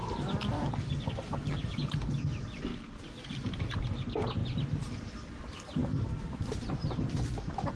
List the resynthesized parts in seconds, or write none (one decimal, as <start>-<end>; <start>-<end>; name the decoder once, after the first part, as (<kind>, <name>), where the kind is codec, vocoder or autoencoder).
5.8-6.7 (vocoder, BigVGAN v2)